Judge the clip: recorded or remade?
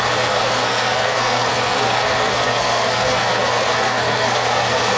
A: remade